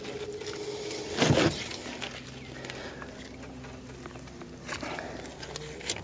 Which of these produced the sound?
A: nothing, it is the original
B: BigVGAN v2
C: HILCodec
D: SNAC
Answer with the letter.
A